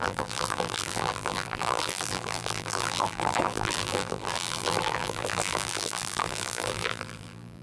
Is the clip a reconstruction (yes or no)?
yes